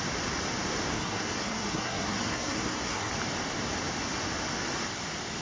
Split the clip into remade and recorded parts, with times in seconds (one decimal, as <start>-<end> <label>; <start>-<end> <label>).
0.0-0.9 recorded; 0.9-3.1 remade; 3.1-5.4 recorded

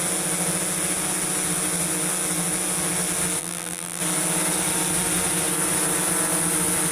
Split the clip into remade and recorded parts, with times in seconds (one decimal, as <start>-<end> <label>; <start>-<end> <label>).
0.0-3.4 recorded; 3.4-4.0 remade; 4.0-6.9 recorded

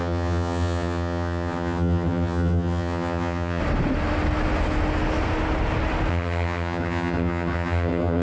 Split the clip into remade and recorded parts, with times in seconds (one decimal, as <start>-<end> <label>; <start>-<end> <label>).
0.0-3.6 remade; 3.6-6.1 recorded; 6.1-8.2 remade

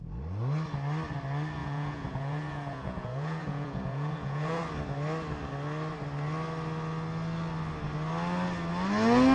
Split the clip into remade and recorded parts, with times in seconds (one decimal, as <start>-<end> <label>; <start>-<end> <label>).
0.0-1.6 recorded; 1.6-4.6 remade; 4.6-9.3 recorded

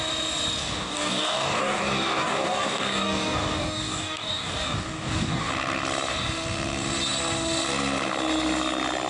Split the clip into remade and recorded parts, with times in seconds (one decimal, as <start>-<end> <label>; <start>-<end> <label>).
0.0-0.6 recorded; 0.6-5.5 remade; 5.5-9.1 recorded

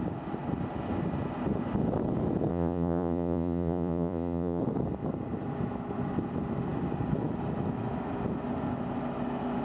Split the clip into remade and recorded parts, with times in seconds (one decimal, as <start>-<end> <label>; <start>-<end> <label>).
0.0-2.5 recorded; 2.5-4.6 remade; 4.6-9.6 recorded